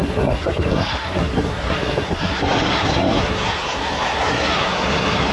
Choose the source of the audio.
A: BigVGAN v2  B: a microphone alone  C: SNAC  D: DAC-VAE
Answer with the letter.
C